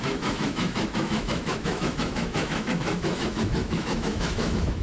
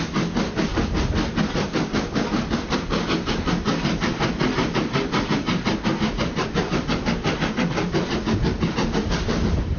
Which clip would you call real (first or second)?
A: second